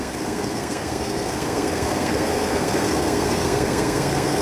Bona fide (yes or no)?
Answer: no